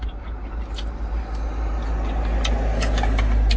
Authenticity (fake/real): real